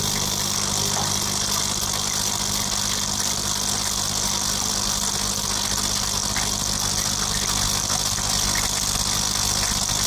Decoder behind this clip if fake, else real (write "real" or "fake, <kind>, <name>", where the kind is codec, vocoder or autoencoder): real